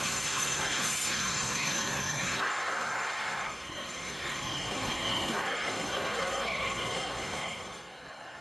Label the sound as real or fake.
fake